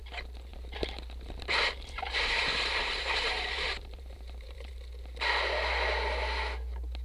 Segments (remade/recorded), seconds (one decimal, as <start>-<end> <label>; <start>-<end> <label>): 0.0-0.5 recorded; 0.5-4.7 remade; 4.7-7.0 recorded